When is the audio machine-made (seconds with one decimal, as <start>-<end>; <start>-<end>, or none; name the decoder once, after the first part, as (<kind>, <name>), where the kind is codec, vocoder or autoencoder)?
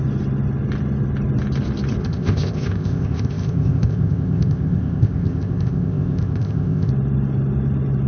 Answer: 2.0-6.9 (codec, ZipCodec)